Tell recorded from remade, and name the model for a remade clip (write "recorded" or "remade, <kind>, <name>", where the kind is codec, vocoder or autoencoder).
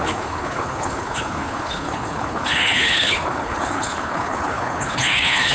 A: remade, codec, HILCodec